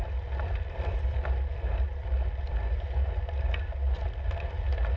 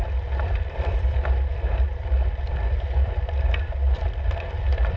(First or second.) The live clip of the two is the first